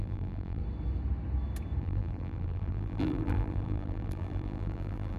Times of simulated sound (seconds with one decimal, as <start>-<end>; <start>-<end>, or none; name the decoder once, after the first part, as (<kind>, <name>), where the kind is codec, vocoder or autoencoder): 0.0-0.6 (vocoder, BigVGAN v2); 1.8-5.2